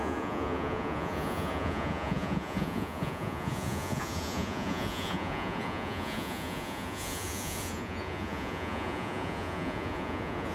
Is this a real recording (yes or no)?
no